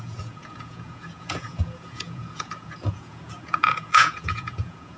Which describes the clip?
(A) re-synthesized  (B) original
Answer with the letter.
A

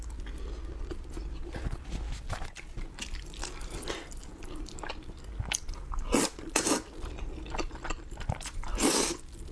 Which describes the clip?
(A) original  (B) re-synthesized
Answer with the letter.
A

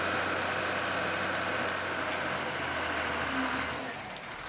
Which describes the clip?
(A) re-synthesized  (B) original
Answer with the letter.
B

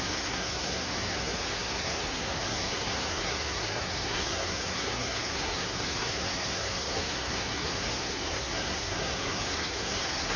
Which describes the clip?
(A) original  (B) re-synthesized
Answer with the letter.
B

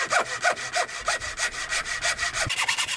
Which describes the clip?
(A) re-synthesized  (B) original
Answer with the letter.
B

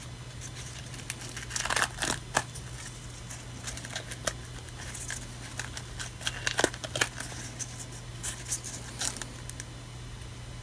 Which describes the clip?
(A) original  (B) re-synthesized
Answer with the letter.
A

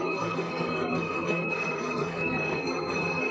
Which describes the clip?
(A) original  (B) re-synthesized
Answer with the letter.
B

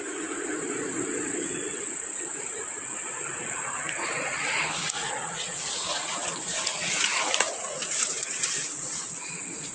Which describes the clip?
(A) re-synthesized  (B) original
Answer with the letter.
A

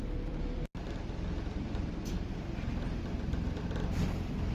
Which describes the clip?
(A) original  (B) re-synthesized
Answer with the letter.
B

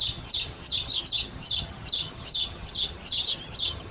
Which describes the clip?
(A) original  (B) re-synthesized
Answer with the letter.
B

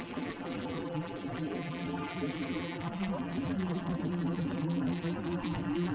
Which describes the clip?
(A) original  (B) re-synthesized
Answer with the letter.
B